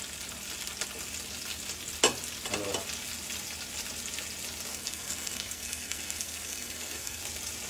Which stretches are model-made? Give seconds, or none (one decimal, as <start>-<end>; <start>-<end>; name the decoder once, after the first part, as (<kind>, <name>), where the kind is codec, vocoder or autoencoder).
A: 4.7-7.2 (codec, SNAC)